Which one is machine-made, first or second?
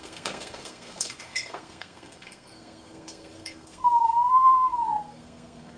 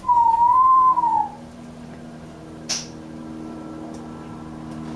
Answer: first